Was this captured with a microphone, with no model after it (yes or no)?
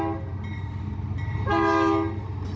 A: yes